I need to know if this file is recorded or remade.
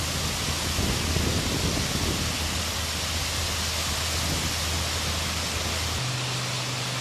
recorded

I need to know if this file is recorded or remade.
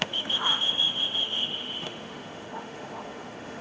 remade